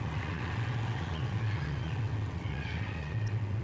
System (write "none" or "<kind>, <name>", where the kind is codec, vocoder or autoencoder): vocoder, WaveNeXt